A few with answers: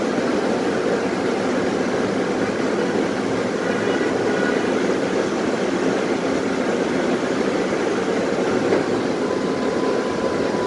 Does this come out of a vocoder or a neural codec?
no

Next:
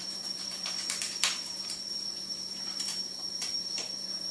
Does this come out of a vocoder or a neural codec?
yes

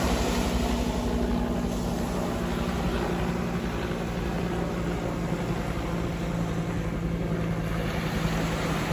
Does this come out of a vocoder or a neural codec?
no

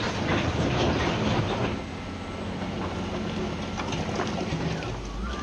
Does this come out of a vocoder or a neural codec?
no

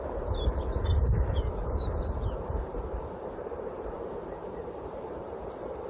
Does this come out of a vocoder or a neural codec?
yes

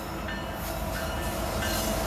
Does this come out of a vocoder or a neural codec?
no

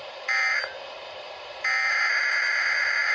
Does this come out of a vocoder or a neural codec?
yes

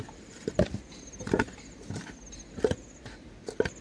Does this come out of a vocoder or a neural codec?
no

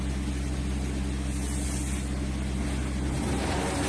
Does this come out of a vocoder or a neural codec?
no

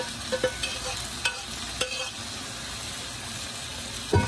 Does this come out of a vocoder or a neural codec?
no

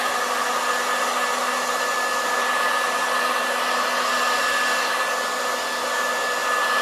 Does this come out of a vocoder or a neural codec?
no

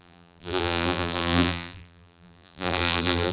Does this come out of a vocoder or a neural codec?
yes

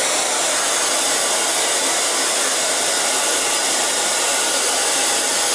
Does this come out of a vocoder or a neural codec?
no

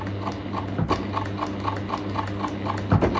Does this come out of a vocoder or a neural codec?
no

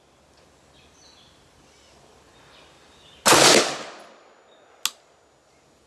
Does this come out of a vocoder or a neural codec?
no